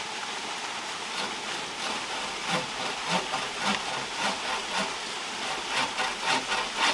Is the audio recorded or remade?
recorded